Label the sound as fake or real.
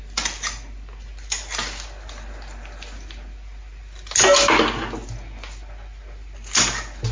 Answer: real